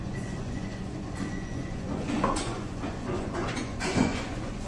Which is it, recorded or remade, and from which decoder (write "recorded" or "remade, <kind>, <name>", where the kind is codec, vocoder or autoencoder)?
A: remade, vocoder, Vocos